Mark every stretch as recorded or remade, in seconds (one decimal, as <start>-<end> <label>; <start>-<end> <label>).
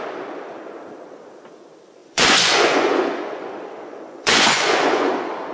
0.0-2.0 recorded; 2.0-5.1 remade; 5.1-5.5 recorded